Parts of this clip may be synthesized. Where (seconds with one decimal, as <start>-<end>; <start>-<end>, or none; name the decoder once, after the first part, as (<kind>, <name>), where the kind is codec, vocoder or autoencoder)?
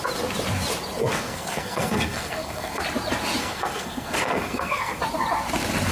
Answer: 1.0-2.8 (codec, SNAC); 3.4-5.0